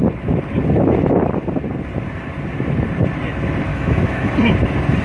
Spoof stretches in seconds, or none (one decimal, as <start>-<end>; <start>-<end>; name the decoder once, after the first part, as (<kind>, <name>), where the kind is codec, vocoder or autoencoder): 3.7-4.3 (autoencoder, DAC-VAE)

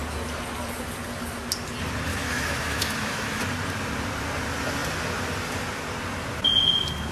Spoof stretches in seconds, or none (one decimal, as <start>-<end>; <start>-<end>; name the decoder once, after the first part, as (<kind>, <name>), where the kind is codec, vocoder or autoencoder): 2.1-3.4 (autoencoder, DAC-VAE)

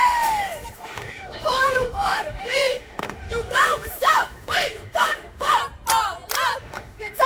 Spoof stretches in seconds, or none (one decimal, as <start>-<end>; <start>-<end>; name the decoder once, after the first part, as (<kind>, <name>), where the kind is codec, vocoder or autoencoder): 0.0-5.6 (autoencoder, DAC-VAE); 6.6-7.3

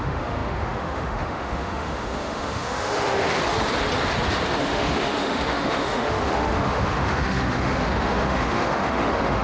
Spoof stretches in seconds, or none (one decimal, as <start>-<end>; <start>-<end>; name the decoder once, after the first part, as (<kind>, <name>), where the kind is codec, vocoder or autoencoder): 0.0-3.4 (autoencoder, DAC-VAE); 4.6-9.4

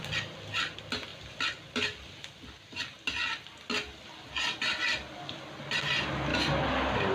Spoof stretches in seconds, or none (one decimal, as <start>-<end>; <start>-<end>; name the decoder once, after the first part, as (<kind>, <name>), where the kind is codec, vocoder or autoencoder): none

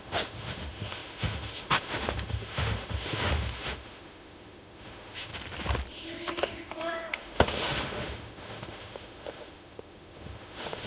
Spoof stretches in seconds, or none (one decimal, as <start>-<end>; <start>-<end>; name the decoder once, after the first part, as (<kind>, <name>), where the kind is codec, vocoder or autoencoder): 0.0-5.3 (autoencoder, DAC-VAE); 5.9-10.9